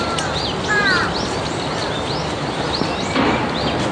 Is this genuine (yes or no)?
yes